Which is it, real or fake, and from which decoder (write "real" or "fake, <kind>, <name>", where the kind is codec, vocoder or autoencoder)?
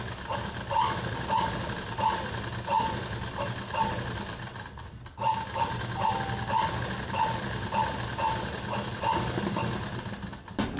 real